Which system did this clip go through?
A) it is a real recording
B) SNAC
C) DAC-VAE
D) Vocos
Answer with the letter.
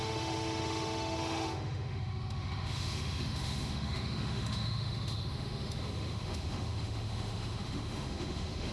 C